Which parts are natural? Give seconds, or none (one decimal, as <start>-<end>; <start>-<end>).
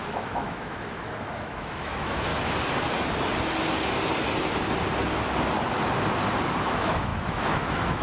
2.3-6.6